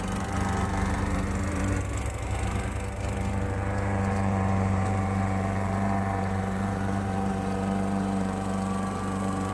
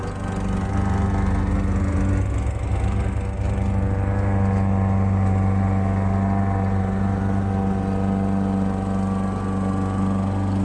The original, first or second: second